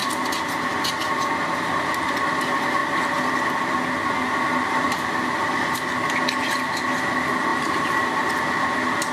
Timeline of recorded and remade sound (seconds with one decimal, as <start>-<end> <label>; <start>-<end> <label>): 0.0-7.5 recorded; 7.5-8.6 remade; 8.6-9.1 recorded